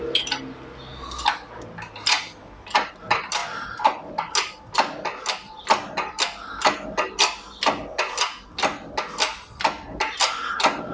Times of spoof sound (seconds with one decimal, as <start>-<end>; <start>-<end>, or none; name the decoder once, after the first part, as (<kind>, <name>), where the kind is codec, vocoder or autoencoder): none